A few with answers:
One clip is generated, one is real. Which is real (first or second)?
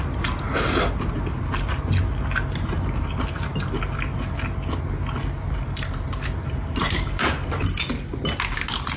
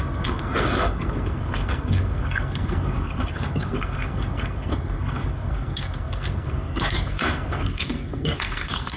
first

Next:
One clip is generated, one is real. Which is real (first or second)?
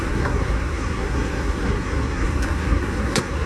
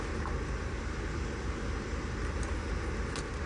second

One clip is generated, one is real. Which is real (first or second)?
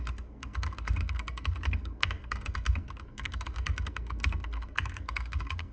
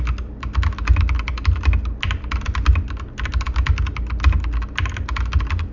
second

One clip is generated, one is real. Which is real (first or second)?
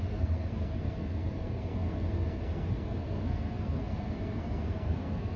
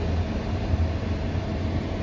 second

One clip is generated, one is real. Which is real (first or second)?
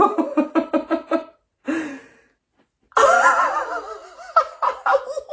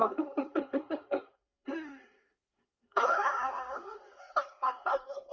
first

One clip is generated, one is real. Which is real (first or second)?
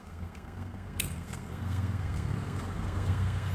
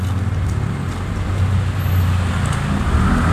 second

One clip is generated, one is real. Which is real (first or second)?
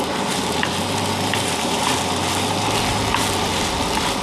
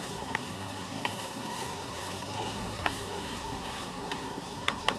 first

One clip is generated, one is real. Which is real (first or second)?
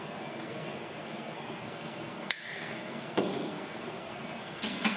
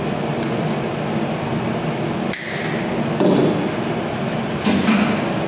second